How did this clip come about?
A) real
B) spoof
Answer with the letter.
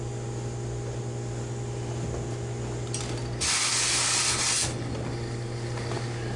A